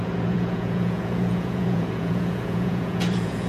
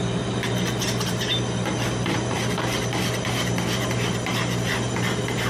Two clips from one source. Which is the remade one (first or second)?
first